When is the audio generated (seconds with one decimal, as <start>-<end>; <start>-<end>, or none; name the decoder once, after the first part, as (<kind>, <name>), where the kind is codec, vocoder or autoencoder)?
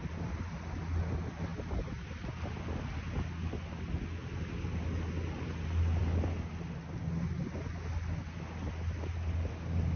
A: none